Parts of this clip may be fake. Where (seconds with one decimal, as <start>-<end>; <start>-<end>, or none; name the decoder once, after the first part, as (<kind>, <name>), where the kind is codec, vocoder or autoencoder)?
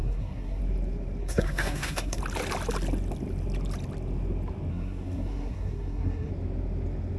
0.0-0.6 (codec, SNAC); 1.2-2.2; 4.7-6.3